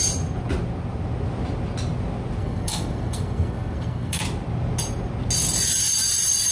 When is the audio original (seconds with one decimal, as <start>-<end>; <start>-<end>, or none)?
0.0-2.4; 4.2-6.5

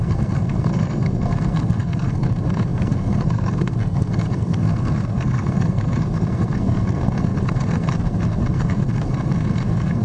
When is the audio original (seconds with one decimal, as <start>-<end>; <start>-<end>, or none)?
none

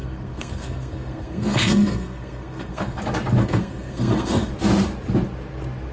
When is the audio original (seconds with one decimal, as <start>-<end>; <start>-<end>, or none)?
3.0-3.4; 4.5-5.9

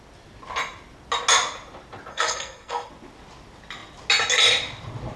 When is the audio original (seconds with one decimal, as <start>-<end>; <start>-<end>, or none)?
0.0-2.1; 2.9-5.2

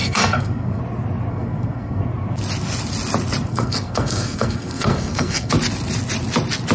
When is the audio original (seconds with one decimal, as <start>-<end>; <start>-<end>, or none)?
0.8-1.3; 2.0-3.5; 5.5-6.7

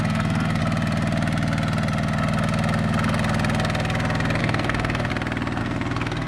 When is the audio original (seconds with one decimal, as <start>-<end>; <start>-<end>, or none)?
0.6-4.4; 5.1-5.6

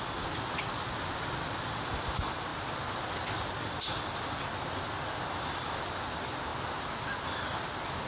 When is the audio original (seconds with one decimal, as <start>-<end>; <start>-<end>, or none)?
0.0-8.1

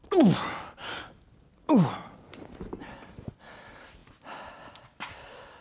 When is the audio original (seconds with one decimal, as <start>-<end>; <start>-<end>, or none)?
0.0-5.6